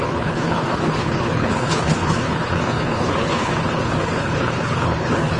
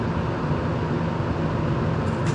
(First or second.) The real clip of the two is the second